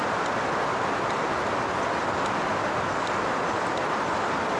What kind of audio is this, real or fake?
real